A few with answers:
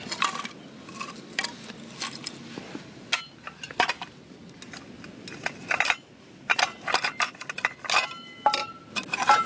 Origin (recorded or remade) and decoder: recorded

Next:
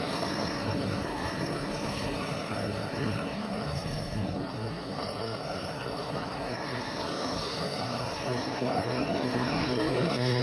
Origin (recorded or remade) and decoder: remade, codec, SNAC